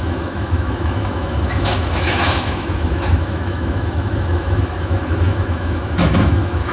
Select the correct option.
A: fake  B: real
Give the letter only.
A